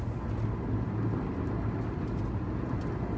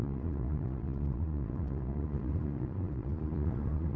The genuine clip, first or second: first